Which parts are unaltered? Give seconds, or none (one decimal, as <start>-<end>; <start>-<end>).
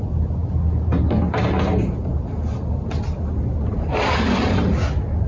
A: 0.0-5.3